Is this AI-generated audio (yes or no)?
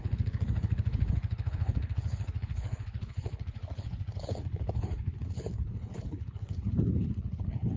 yes